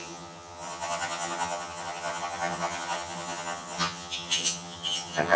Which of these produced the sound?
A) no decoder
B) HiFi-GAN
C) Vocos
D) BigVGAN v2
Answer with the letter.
B